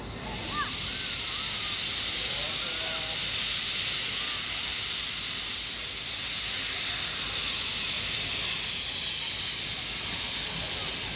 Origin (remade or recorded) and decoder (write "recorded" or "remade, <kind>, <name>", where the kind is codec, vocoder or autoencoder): recorded